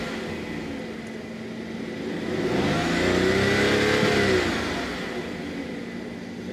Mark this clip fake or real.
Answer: real